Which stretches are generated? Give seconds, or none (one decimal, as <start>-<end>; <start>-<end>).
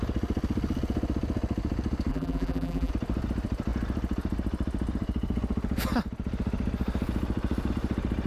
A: 2.1-2.9